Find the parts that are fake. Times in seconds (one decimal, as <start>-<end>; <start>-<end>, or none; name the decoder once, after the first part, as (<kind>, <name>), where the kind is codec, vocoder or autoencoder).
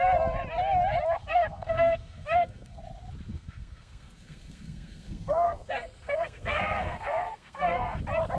1.2-2.8 (codec, SNAC); 3.3-8.0